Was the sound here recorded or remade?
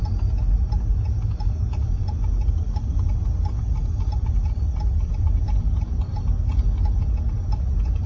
recorded